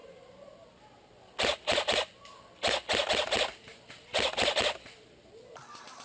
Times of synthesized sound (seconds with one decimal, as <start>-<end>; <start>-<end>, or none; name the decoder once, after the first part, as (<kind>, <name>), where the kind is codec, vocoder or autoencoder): none